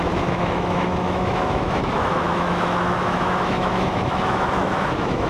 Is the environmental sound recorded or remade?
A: remade